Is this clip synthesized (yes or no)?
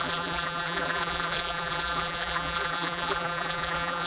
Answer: yes